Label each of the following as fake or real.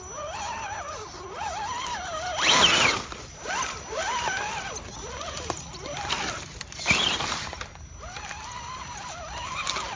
real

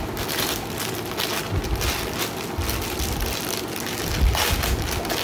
real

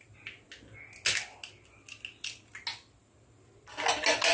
real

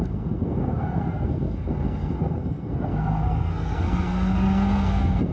fake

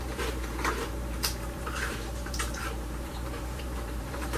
fake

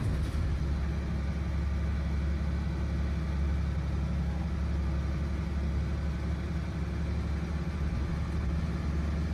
real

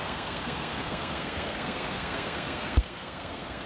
fake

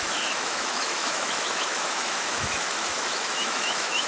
fake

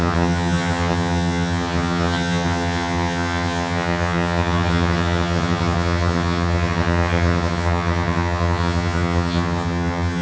fake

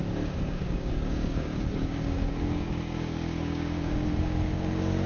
fake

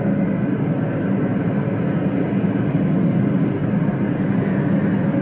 real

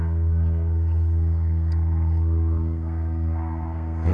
fake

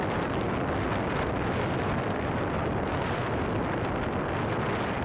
real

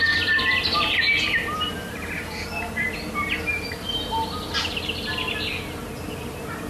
real